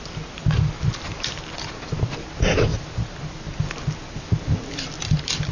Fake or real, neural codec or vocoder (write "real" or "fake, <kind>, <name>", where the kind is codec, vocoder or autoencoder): real